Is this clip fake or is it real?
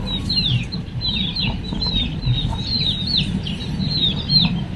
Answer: real